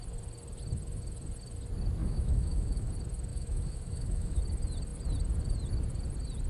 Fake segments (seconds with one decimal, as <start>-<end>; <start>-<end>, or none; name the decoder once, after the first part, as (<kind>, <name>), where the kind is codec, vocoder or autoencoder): 2.0-2.9 (autoencoder, DAC-VAE); 3.3-4.4